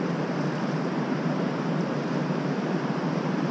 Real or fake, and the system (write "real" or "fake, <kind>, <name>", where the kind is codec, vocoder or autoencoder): fake, vocoder, BigVGAN v2